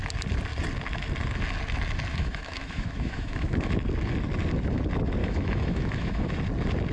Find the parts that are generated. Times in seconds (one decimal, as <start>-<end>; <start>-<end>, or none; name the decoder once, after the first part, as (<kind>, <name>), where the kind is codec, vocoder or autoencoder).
2.1-3.7 (autoencoder, DAC-VAE); 5.2-6.3